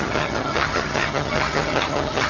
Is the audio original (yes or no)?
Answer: no